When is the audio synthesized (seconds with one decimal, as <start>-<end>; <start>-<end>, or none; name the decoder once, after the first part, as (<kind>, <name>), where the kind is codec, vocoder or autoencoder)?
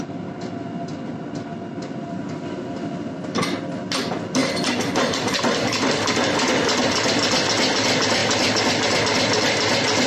none